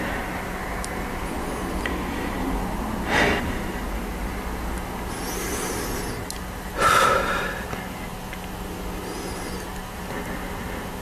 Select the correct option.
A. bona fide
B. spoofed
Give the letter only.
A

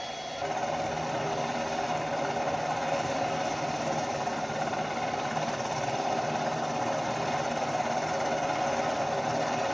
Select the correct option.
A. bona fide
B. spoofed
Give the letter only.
A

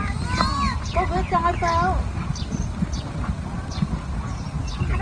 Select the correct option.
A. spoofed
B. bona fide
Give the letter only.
B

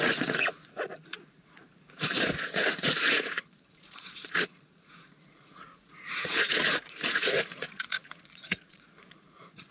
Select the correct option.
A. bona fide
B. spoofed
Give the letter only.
B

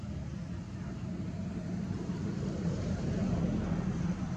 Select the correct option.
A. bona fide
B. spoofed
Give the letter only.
A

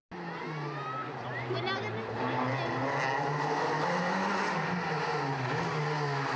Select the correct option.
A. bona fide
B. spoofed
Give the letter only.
A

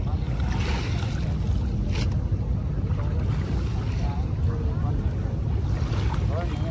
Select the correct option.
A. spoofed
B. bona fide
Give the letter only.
B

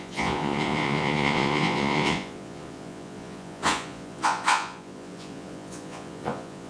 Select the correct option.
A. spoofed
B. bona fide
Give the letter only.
A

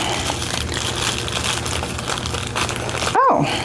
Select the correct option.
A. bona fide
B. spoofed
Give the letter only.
A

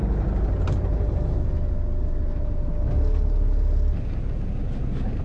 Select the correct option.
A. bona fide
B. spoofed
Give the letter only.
A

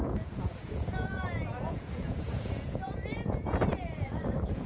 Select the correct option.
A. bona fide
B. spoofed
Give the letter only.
B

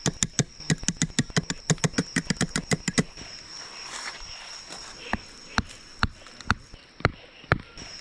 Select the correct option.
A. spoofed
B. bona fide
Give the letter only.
B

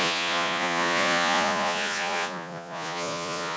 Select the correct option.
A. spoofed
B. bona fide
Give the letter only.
A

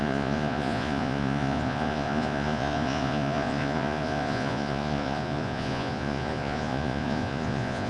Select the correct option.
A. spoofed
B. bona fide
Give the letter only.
A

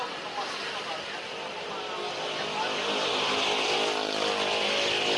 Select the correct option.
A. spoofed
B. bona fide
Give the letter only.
B